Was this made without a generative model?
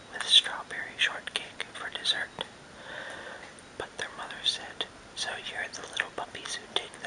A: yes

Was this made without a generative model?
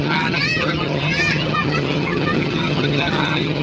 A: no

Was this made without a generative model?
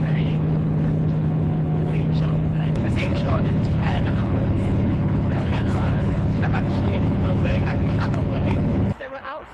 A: no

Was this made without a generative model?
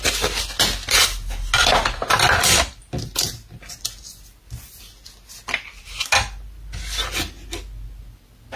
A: yes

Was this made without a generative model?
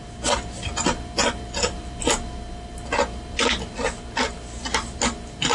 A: yes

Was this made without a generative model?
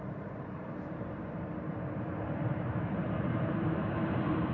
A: no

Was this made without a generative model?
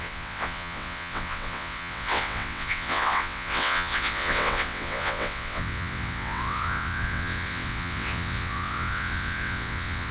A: no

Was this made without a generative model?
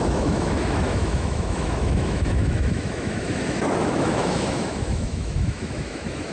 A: no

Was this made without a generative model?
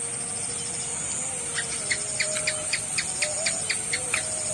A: yes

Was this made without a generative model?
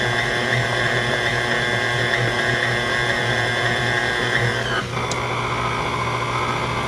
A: yes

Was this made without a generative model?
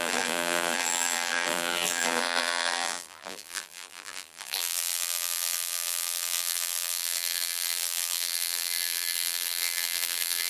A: no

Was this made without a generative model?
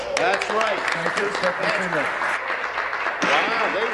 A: yes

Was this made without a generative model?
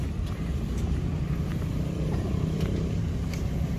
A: yes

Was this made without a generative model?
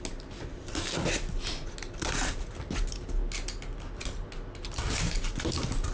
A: yes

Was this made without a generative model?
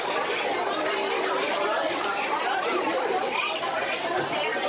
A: no